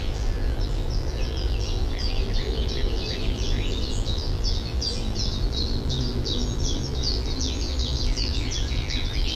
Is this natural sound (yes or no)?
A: no